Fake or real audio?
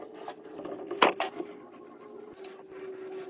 real